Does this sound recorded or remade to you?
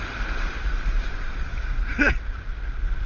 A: recorded